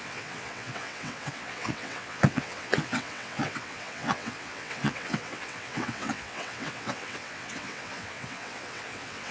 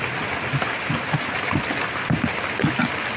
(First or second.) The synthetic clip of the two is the first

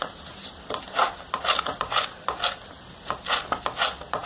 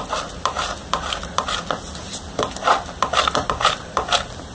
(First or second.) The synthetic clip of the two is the second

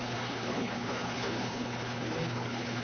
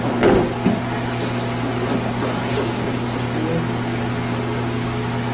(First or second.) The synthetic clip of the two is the first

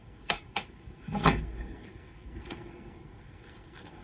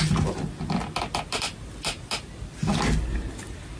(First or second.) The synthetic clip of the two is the first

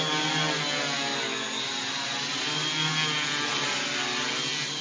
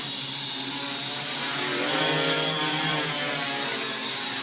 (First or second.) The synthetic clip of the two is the second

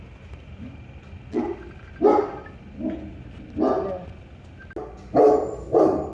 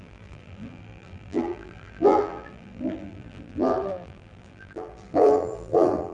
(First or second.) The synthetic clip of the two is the second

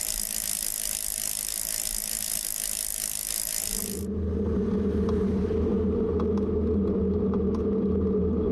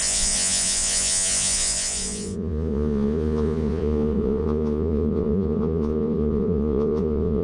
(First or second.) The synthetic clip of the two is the second